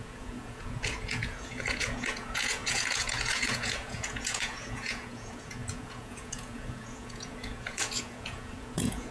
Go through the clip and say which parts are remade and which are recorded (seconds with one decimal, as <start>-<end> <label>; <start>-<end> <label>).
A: 0.0-9.1 remade